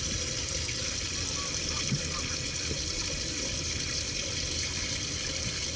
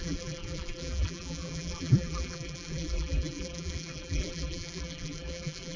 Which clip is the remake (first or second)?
second